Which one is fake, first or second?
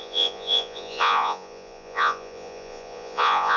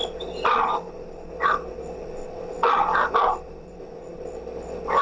first